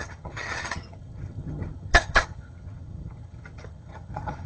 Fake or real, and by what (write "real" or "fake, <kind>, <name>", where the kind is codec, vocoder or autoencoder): fake, vocoder, HiFi-GAN